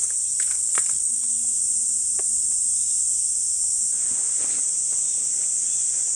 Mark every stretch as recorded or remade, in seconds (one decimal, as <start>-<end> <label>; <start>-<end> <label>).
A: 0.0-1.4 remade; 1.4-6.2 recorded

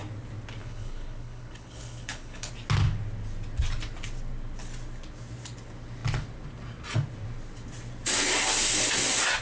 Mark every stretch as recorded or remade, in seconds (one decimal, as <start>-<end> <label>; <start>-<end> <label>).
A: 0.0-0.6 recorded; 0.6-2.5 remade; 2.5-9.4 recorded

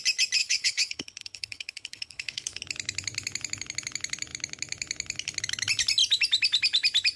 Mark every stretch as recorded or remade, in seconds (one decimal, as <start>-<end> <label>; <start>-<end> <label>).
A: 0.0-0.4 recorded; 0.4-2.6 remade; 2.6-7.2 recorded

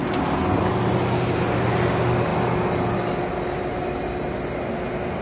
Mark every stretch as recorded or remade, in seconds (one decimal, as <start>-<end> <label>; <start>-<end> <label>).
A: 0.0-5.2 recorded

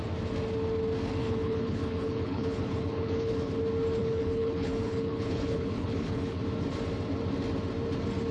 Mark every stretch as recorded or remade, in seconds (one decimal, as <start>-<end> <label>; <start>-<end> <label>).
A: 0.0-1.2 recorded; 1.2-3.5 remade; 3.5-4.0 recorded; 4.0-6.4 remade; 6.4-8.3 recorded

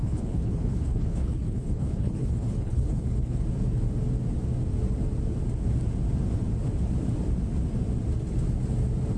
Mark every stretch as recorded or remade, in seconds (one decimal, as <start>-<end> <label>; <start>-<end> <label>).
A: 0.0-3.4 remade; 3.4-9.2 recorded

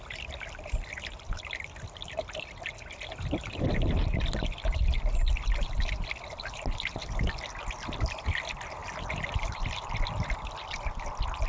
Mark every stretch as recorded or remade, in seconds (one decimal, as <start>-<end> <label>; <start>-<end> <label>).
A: 0.0-11.5 recorded

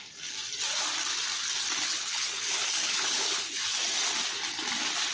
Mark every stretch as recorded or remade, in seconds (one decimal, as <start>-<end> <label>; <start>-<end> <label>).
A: 0.0-1.9 recorded; 1.9-3.6 remade; 3.6-5.1 recorded